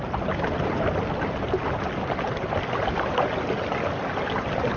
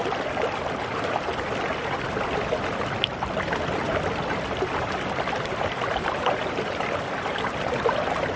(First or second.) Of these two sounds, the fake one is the second